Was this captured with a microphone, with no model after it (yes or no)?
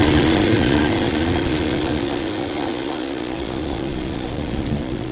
no